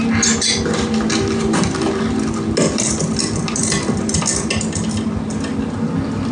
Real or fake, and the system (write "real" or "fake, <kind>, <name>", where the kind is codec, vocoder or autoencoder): real